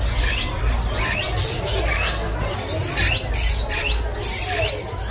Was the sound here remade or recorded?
recorded